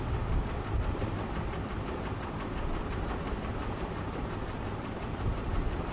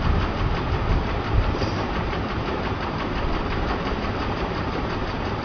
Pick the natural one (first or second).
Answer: first